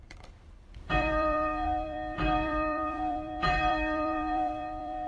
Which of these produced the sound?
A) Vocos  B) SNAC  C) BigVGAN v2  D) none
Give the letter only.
C